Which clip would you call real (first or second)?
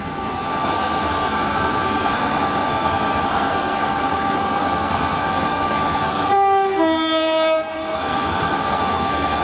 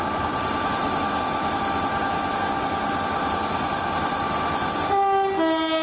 second